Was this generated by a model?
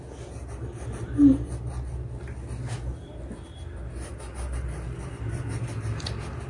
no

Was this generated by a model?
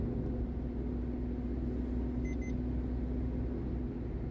no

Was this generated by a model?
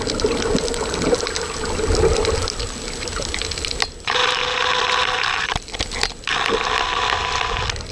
no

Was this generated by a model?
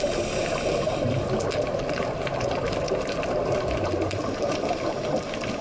no